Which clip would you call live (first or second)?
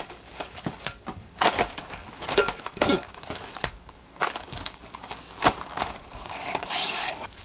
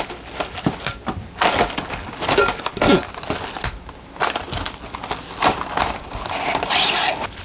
second